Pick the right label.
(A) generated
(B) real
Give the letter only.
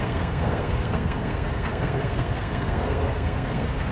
A